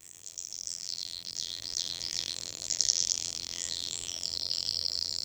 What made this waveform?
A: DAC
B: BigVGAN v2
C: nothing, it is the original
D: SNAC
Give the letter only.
B